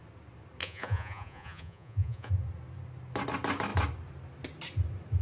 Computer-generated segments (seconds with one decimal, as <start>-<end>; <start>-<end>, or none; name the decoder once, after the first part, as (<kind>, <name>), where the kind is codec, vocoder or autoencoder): 0.6-2.3 (vocoder, Vocos)